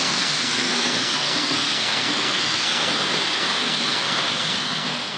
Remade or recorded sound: remade